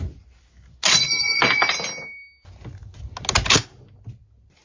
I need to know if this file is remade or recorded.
recorded